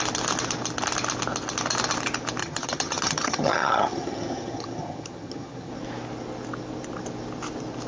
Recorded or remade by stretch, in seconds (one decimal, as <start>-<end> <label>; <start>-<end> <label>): 0.0-2.4 recorded; 2.4-5.7 remade; 5.7-7.9 recorded